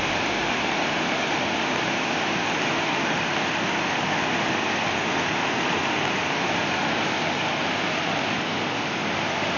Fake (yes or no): no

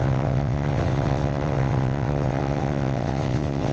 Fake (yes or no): yes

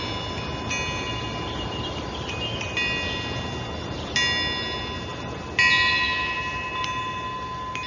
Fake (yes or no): no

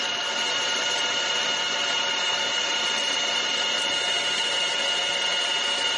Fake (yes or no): yes